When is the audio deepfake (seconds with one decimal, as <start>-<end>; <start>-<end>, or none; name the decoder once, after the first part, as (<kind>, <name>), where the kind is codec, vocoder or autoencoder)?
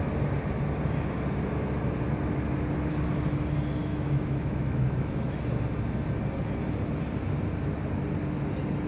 3.8-5.4 (autoencoder, DAC-VAE)